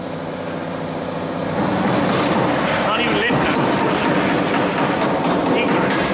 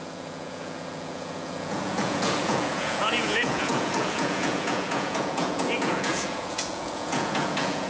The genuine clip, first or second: first